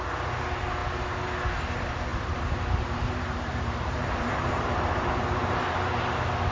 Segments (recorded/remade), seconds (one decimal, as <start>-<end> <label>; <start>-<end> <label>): 0.0-2.1 recorded; 2.1-6.0 remade; 6.0-6.5 recorded